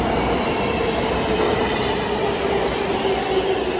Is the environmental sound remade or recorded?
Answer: recorded